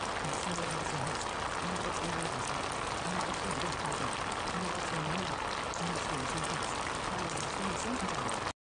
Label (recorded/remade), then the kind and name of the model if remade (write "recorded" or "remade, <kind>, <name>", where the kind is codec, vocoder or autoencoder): recorded